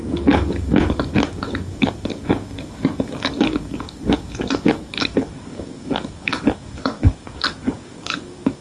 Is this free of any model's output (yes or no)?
no